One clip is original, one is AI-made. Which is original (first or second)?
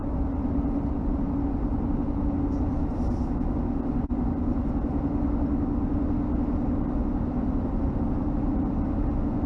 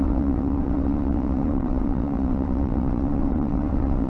first